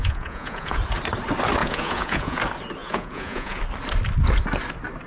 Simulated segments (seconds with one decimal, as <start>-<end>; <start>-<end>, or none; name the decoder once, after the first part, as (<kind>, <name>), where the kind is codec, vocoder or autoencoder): 0.0-0.8 (vocoder, Vocos); 1.6-2.4; 2.8-3.6